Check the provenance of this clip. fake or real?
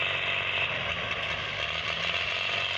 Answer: real